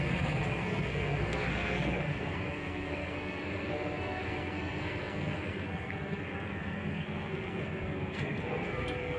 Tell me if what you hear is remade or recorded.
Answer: remade